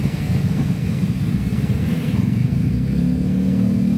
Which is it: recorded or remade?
remade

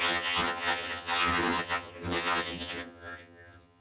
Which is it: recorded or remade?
remade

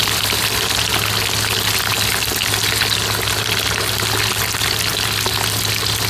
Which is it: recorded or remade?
recorded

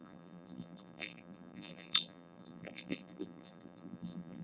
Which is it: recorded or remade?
remade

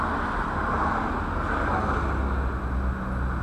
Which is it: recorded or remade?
recorded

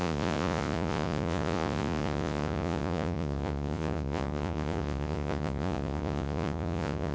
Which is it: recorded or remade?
remade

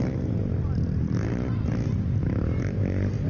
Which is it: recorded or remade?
remade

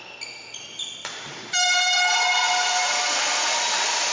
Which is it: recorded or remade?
recorded